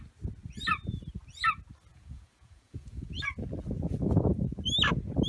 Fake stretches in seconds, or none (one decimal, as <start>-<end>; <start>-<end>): 1.9-3.2